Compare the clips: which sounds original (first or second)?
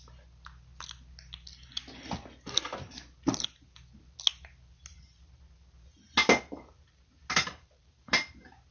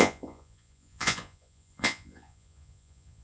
first